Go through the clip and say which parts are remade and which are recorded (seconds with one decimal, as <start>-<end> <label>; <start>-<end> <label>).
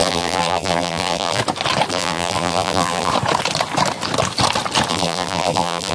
0.0-1.4 remade; 1.4-1.9 recorded; 1.9-3.1 remade; 3.1-4.9 recorded; 4.9-5.9 remade